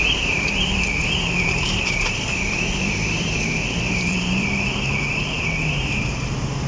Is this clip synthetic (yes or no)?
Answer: yes